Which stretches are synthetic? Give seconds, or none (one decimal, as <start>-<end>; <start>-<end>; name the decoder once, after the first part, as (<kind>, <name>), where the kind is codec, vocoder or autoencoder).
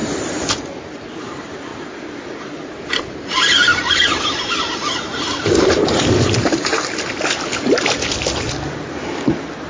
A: 0.0-1.7 (vocoder, BigVGAN v2); 2.4-6.7